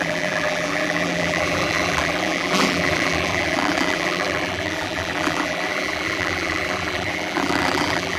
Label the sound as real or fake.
fake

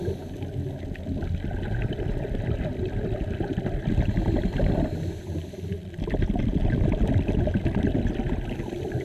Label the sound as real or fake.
real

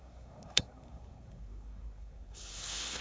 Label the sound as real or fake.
fake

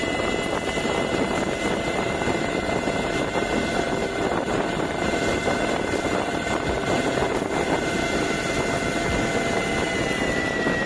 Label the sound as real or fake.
real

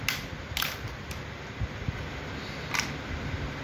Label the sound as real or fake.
real